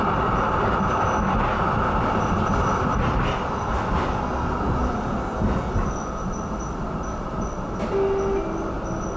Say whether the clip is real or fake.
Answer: real